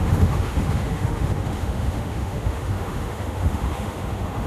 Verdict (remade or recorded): remade